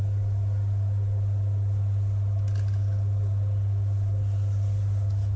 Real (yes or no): yes